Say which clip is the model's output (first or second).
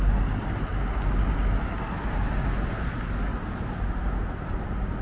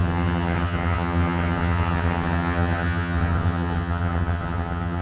second